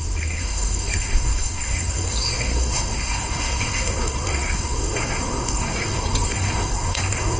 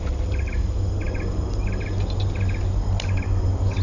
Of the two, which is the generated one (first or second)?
first